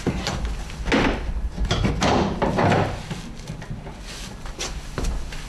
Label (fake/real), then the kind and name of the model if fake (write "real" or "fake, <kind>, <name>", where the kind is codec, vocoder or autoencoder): real